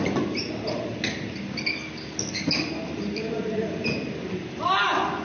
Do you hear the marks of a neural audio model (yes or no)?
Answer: no